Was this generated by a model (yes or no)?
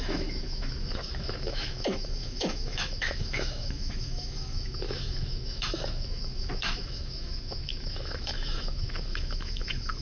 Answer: yes